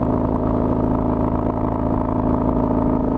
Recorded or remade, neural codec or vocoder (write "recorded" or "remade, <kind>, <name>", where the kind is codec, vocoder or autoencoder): recorded